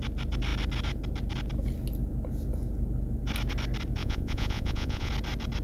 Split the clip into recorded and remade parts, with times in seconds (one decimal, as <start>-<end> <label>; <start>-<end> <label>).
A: 0.0-4.0 recorded; 4.0-5.1 remade; 5.1-5.6 recorded